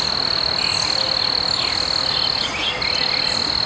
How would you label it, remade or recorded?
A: recorded